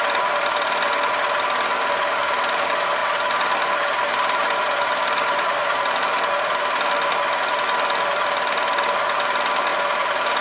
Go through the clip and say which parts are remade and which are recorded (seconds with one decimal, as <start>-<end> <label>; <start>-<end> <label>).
0.0-3.0 recorded; 3.0-6.0 remade; 6.0-9.7 recorded; 9.7-10.4 remade